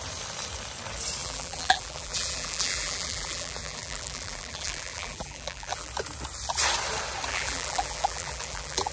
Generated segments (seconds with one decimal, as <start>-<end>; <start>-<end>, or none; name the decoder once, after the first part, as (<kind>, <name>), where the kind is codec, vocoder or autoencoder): 1.2-5.9 (vocoder, BigVGAN v2); 7.3-8.9